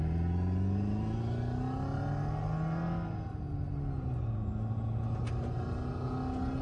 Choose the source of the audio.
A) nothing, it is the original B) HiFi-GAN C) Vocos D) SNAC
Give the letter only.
A